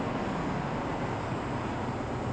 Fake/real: real